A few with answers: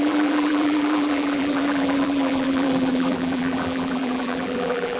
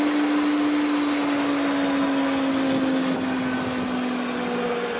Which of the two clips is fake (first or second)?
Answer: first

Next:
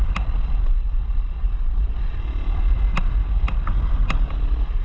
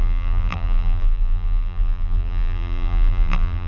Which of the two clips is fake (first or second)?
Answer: second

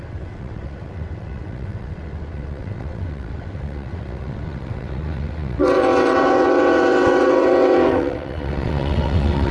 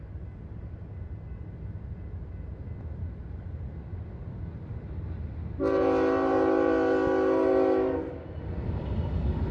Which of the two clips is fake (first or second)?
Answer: first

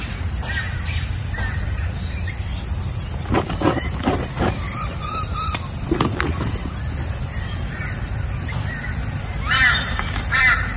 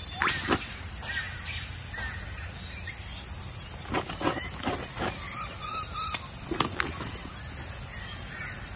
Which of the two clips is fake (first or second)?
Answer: first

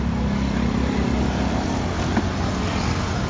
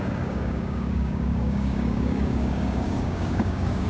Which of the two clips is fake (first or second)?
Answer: second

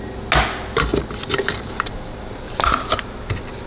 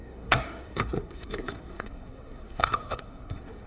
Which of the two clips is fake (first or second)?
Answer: second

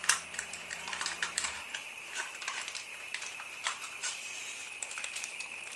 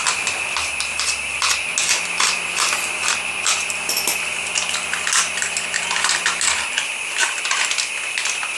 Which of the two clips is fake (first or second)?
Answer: first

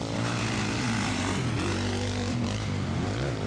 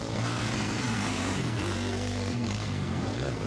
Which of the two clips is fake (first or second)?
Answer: second